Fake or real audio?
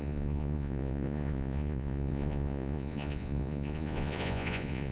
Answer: fake